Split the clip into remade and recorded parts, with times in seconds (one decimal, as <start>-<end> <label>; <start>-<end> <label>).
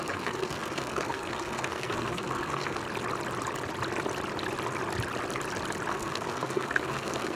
0.0-2.8 remade; 2.8-5.9 recorded; 5.9-7.4 remade